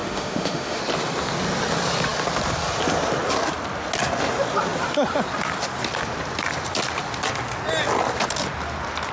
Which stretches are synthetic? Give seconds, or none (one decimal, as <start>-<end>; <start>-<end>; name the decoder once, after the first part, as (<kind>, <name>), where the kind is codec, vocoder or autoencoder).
0.0-0.8 (autoencoder, DAC-VAE)

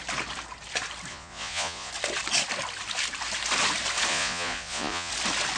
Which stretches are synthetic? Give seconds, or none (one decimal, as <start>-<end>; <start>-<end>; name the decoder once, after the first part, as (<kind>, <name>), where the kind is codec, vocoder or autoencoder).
1.1-1.9 (vocoder, Vocos); 4.1-5.1

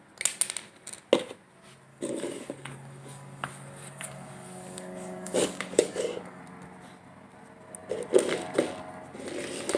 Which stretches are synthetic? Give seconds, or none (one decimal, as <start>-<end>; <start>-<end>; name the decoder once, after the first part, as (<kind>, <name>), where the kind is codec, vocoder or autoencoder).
1.9-6.4 (codec, DAC)

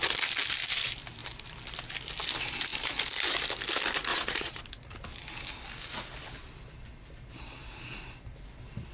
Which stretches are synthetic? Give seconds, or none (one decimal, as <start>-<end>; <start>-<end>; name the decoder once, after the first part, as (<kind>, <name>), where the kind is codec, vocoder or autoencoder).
4.1-4.6 (vocoder, Vocos)